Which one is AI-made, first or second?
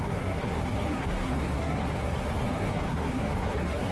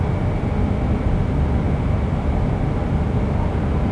first